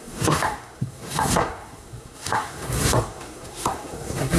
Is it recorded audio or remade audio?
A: remade